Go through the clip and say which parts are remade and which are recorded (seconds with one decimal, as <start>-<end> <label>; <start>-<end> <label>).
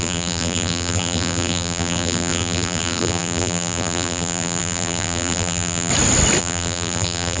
0.0-5.9 remade; 5.9-6.4 recorded; 6.4-7.4 remade